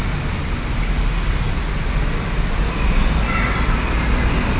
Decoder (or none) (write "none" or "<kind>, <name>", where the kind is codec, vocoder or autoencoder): none